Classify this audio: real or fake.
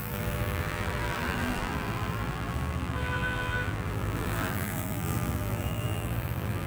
fake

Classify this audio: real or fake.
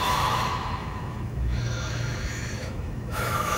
fake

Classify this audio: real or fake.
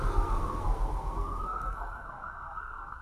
fake